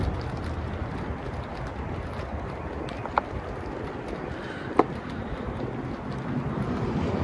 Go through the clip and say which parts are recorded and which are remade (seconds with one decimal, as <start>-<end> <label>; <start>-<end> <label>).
0.0-5.2 recorded; 5.2-5.9 remade; 5.9-7.2 recorded